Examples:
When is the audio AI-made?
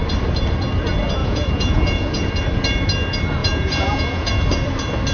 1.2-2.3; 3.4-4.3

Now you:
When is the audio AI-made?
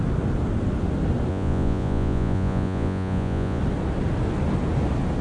1.3-3.6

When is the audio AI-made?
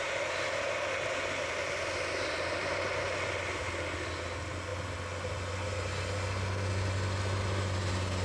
none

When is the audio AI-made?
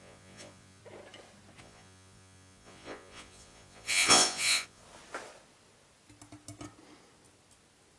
0.0-0.8; 1.6-4.8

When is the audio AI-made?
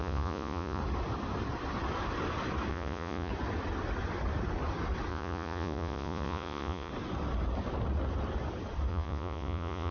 0.0-0.8; 2.7-3.3; 5.1-6.9; 8.9-9.9